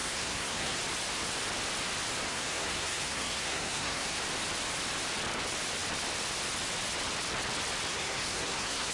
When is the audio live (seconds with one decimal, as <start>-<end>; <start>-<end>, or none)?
0.8-2.3; 4.2-7.9